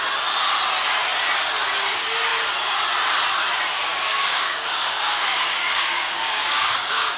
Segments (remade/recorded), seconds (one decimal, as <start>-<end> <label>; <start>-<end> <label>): 0.0-3.9 recorded; 3.9-7.2 remade